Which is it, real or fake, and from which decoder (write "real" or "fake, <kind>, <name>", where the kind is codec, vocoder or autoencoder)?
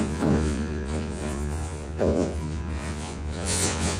fake, vocoder, Vocos